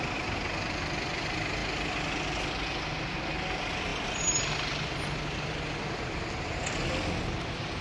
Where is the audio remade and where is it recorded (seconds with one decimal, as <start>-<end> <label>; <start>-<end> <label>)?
0.0-7.8 recorded